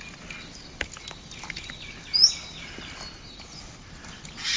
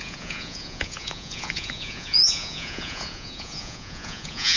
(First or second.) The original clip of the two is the first